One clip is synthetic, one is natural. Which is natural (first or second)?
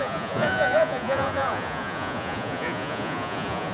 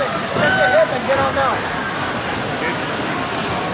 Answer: second